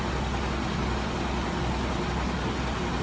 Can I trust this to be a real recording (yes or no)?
yes